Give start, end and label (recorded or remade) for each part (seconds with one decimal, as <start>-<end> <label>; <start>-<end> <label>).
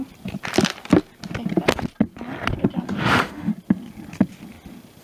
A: 0.0-3.0 recorded; 3.0-3.5 remade; 3.5-5.0 recorded